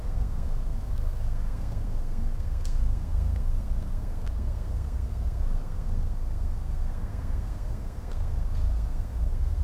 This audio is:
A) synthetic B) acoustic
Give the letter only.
A